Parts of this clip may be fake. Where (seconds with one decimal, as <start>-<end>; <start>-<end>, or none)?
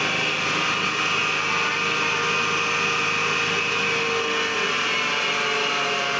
none